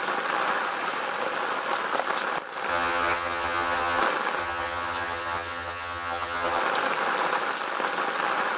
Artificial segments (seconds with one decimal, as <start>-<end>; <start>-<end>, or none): 2.7-4.0; 4.4-6.6